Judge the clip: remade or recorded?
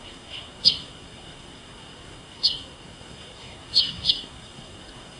remade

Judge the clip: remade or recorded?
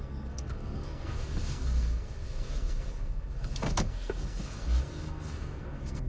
remade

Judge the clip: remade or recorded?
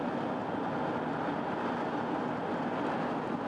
recorded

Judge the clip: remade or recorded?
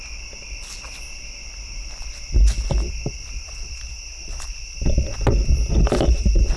recorded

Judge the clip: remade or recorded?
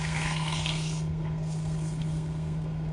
remade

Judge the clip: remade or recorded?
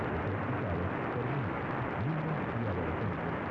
recorded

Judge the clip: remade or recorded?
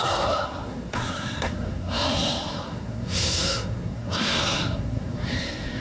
remade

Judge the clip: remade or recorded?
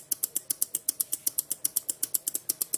recorded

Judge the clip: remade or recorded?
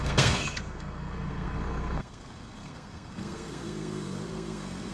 remade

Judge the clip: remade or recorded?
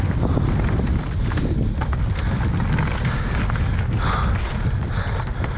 recorded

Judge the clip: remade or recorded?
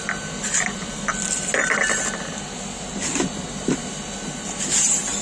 recorded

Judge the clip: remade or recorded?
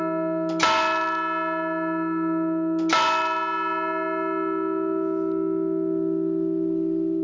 recorded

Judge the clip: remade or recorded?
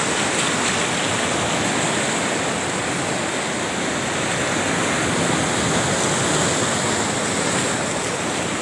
recorded